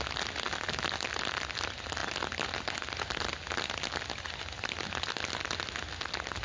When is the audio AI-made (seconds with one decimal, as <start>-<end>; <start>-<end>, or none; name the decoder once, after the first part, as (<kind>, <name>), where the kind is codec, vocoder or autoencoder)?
none